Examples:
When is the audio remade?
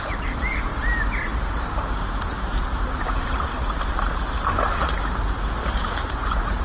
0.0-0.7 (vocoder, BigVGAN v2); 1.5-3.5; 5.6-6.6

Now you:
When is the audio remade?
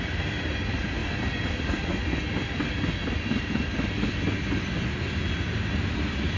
none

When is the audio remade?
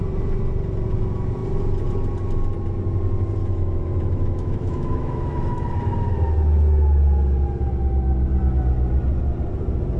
3.4-5.7 (autoencoder, DAC-VAE)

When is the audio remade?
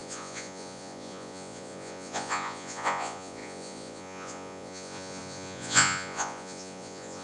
0.0-7.2 (vocoder, Vocos)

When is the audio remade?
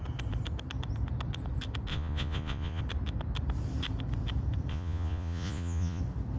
1.9-2.8 (vocoder, Vocos); 4.7-6.0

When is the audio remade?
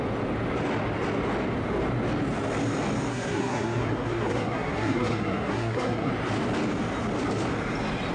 3.1-6.1 (codec, SNAC)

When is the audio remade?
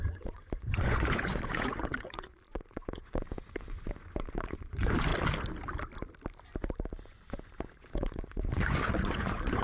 0.0-5.1 (vocoder, Vocos); 7.0-9.6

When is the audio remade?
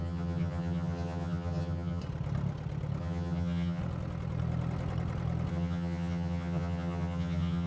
0.0-2.0 (vocoder, HiFi-GAN); 3.0-3.8; 5.5-7.7